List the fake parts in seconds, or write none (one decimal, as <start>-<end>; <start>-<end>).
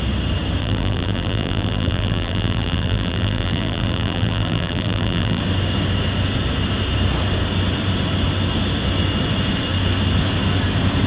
0.6-5.4